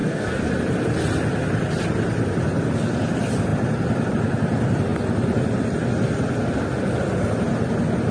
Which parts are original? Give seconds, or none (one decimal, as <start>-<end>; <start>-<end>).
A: 0.5-8.1